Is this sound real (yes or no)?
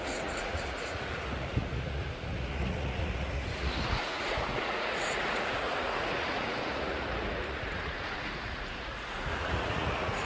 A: no